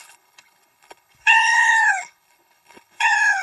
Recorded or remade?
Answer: remade